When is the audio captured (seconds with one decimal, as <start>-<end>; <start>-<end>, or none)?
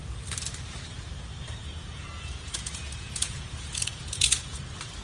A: 0.0-1.6; 4.6-5.0